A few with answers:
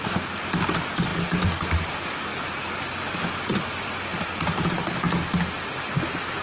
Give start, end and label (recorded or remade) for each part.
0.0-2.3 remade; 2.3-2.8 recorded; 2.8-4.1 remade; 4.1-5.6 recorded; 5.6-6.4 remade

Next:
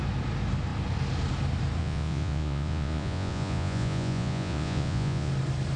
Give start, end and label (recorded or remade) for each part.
0.0-1.8 recorded; 1.8-5.3 remade; 5.3-5.8 recorded